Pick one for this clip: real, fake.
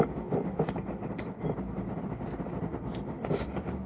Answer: real